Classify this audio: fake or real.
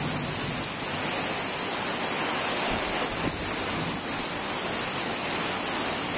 real